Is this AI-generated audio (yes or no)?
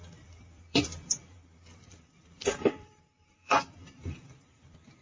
yes